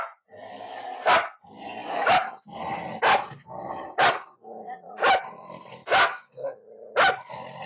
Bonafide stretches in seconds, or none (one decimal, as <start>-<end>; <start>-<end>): 0.0-7.7